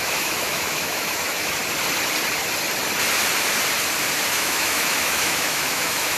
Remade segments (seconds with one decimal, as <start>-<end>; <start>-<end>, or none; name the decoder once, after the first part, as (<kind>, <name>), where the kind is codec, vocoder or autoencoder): 0.0-1.6 (autoencoder, DAC-VAE); 4.3-6.2